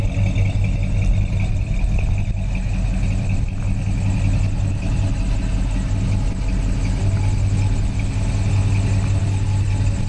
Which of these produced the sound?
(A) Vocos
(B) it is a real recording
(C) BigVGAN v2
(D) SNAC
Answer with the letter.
B